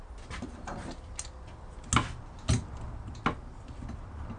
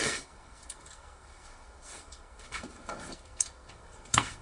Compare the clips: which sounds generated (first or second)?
second